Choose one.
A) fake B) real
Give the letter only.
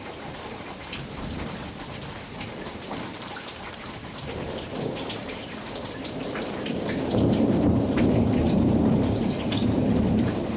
A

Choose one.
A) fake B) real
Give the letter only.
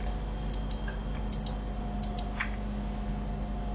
B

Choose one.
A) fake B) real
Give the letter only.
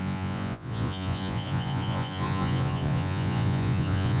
A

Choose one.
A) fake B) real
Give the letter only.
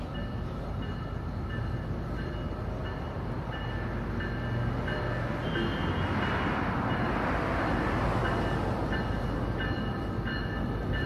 B